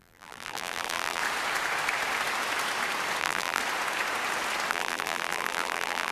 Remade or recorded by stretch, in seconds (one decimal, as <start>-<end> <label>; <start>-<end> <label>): 0.0-1.2 remade; 1.2-3.2 recorded; 3.2-3.6 remade; 3.6-4.7 recorded; 4.7-6.1 remade